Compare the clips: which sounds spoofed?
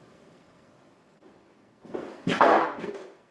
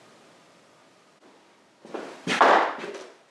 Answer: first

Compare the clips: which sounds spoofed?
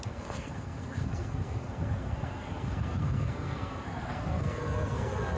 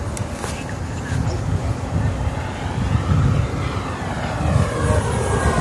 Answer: first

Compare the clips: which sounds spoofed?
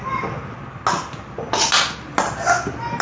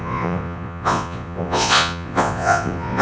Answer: second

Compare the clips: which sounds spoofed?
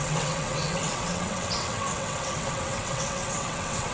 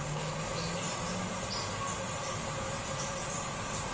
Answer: first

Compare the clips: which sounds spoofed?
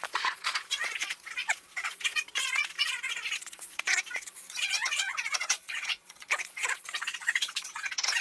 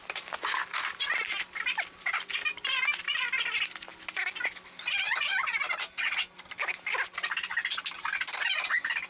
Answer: first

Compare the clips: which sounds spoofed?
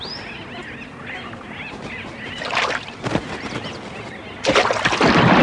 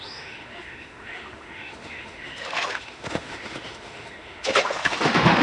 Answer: second